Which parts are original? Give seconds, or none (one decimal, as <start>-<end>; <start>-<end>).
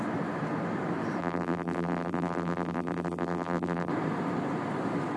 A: 0.0-1.2; 3.9-5.2